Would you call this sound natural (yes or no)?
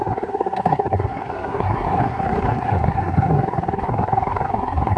no